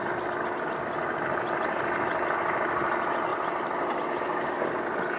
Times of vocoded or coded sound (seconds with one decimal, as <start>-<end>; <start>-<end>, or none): none